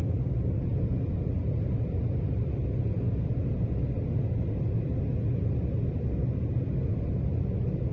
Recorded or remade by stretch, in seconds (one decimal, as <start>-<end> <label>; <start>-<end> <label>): 0.0-7.9 recorded